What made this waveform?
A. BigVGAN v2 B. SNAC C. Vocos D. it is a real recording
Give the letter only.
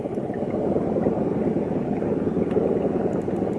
D